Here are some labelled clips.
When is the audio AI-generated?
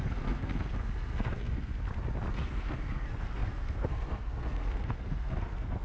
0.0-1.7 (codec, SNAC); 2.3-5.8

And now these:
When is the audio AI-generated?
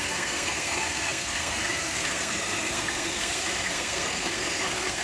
0.0-5.0 (codec, SNAC)